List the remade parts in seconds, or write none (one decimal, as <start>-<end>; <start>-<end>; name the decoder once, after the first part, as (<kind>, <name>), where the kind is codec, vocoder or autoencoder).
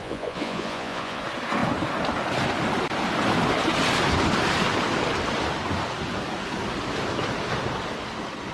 0.0-1.2 (vocoder, Vocos)